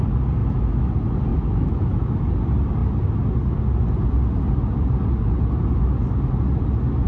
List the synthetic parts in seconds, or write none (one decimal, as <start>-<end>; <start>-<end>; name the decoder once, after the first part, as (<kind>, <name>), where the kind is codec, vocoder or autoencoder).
0.4-0.9 (autoencoder, DAC-VAE); 1.3-2.2